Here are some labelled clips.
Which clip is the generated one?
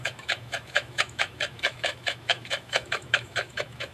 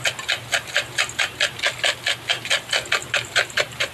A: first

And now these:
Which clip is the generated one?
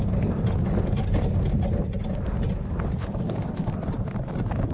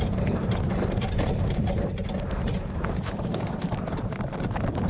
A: second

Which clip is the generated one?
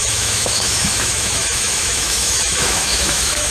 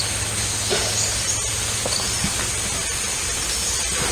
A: first